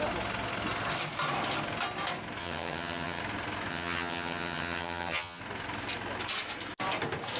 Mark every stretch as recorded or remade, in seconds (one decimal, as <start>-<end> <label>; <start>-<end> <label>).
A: 0.0-2.4 recorded; 2.4-3.2 remade; 3.2-3.7 recorded; 3.7-5.4 remade; 5.4-7.4 recorded